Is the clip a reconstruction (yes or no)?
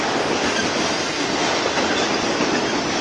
no